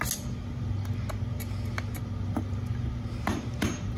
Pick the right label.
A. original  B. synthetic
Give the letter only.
A